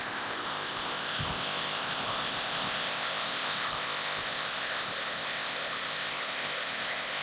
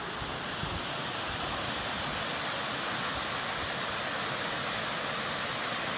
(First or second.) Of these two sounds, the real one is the second